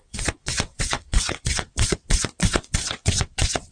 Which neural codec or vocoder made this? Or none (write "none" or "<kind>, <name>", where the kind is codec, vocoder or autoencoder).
vocoder, WaveNeXt